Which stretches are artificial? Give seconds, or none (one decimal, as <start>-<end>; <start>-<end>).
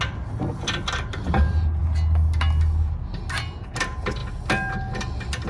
none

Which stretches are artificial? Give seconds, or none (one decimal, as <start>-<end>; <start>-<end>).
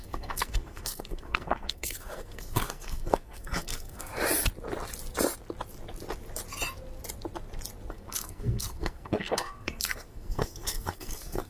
0.0-4.1; 7.9-11.5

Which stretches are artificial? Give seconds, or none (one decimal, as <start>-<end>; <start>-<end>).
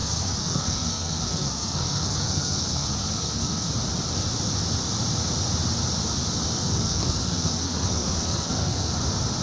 0.0-3.7; 6.6-8.9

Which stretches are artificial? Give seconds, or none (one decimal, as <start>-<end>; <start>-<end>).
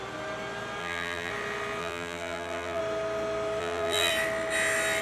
0.8-1.3; 1.8-2.8; 3.6-4.1